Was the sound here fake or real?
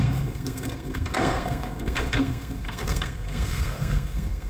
fake